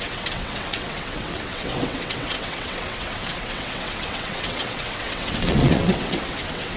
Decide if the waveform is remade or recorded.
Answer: remade